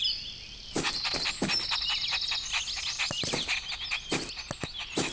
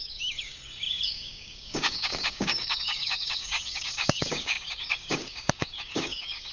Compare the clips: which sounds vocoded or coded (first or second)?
second